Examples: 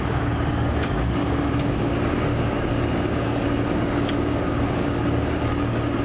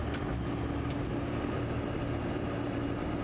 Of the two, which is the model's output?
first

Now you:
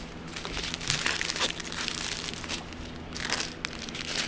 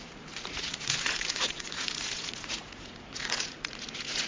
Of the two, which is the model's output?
second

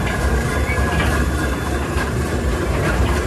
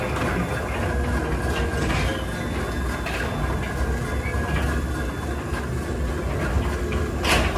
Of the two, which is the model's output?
first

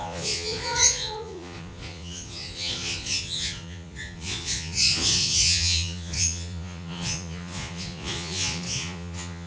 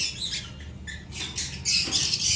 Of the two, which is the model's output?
first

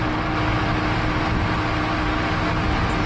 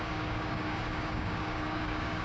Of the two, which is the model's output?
second